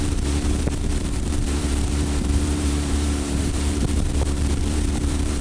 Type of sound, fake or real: fake